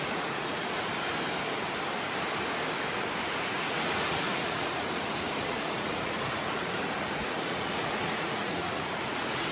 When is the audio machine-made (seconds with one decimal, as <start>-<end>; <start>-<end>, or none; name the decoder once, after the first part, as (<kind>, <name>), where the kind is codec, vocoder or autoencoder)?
0.0-0.9 (vocoder, Vocos); 3.2-9.5